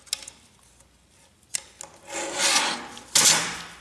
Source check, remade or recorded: recorded